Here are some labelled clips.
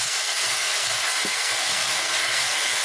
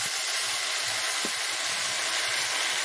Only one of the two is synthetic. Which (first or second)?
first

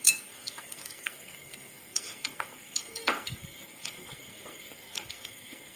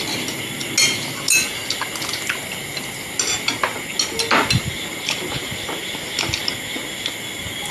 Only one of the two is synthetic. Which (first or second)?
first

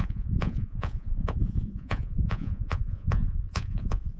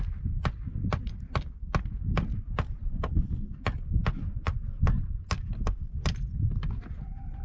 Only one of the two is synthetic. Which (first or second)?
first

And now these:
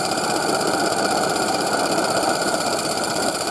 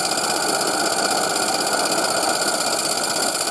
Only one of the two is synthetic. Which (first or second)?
first